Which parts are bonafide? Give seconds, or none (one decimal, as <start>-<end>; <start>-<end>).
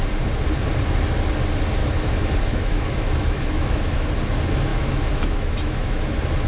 0.0-1.8; 4.1-4.7; 6.0-6.5